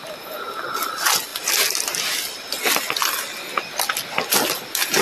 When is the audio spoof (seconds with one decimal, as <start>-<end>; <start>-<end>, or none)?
none